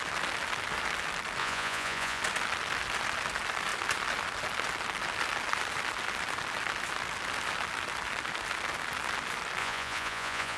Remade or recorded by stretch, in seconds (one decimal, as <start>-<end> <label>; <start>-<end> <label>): 0.0-1.4 recorded; 1.4-2.2 remade; 2.2-9.6 recorded; 9.6-10.6 remade